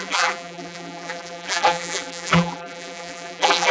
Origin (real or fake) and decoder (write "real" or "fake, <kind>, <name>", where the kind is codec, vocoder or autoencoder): fake, vocoder, BigVGAN v2